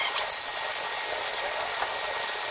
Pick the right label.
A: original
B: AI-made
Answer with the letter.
A